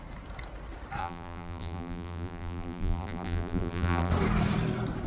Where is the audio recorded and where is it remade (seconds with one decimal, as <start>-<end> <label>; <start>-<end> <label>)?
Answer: 0.0-1.0 recorded; 1.0-4.1 remade; 4.1-5.1 recorded